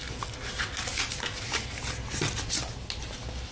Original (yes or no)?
yes